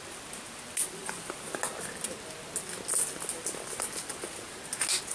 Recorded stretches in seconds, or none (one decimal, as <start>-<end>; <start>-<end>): 0.0-5.1